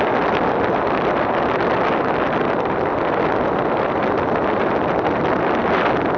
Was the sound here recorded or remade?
recorded